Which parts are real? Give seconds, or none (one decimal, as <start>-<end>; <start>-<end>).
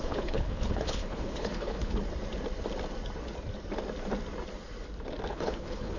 2.0-5.3